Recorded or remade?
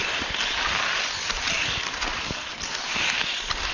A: recorded